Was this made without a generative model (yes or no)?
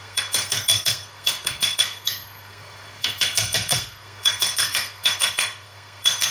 no